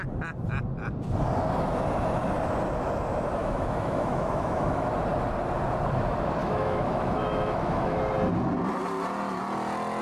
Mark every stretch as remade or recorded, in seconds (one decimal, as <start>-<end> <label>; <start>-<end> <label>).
0.0-3.4 recorded; 3.4-4.9 remade; 4.9-6.4 recorded; 6.4-8.0 remade; 8.0-10.0 recorded